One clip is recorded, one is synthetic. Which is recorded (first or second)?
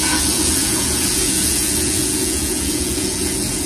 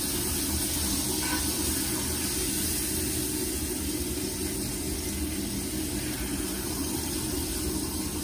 second